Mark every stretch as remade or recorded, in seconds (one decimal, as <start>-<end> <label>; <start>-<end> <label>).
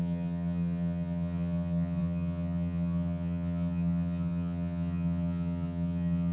0.0-6.3 remade